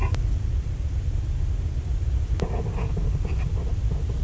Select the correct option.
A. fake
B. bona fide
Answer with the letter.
B